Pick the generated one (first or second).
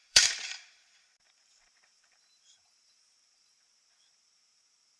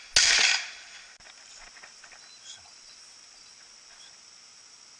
first